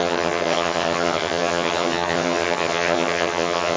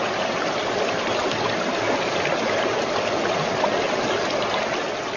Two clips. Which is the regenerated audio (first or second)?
first